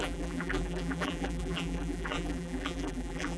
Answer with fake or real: fake